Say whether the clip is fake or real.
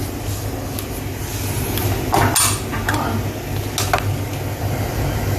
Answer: real